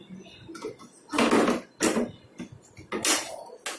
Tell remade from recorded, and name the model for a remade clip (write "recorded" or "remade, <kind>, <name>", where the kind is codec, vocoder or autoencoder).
recorded